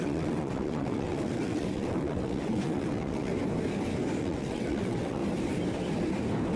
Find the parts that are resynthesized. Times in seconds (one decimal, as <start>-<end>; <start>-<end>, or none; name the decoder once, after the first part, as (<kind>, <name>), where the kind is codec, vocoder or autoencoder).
0.0-3.3 (vocoder, WaveNeXt); 4.2-5.2